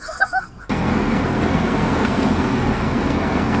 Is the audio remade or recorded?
remade